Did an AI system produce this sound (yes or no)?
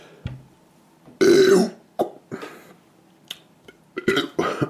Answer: no